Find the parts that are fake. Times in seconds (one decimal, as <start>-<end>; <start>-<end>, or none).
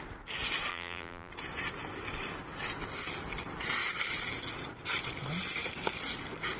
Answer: 0.7-1.3